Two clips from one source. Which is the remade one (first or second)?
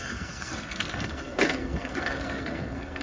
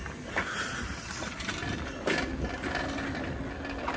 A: first